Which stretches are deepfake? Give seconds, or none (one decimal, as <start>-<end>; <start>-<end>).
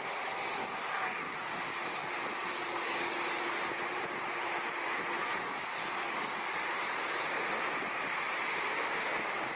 1.0-1.6; 2.0-3.3; 5.2-6.7